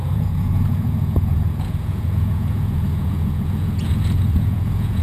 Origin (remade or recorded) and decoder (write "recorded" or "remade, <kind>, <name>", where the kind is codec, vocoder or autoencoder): remade, vocoder, Vocos